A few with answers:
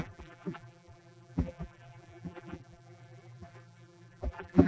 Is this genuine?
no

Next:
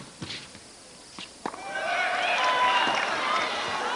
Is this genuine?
yes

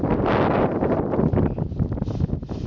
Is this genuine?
yes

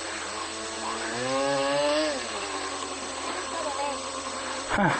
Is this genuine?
yes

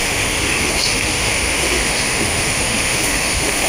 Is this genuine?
no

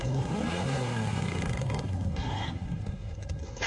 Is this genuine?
no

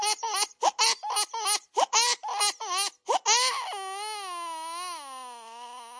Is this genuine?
yes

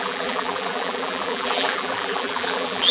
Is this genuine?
no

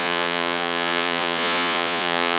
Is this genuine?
no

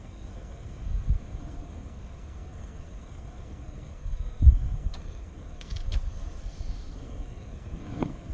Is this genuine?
no